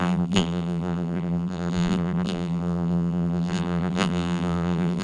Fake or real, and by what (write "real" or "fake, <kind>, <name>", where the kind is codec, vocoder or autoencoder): fake, vocoder, BigVGAN v2